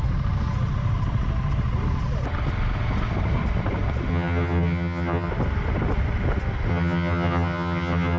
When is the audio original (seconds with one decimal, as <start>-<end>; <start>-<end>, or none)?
0.0-4.1; 5.3-6.7